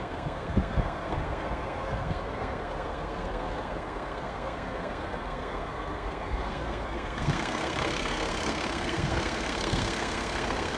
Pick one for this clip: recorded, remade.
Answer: remade